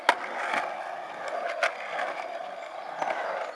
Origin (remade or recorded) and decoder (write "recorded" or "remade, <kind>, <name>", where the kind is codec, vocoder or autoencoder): recorded